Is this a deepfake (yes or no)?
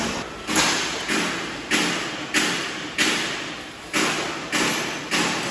no